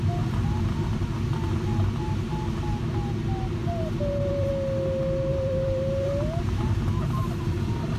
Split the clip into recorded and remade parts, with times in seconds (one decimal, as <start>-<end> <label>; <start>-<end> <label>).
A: 0.0-3.6 recorded; 3.6-4.5 remade; 4.5-5.3 recorded; 5.3-7.6 remade; 7.6-8.0 recorded

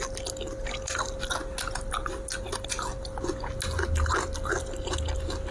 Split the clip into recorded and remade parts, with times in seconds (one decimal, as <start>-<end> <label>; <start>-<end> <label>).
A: 0.0-2.4 recorded; 2.4-2.9 remade; 2.9-5.5 recorded

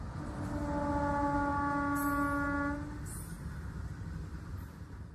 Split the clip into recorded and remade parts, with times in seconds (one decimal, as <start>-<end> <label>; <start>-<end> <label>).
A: 0.0-5.1 recorded